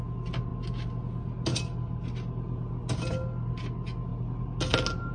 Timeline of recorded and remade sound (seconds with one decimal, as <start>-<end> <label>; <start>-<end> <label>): 0.0-5.1 recorded